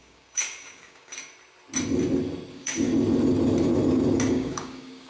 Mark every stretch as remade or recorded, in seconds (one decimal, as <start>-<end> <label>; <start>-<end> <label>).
0.0-1.3 remade; 1.3-2.5 recorded; 2.5-2.9 remade; 2.9-4.3 recorded; 4.3-5.1 remade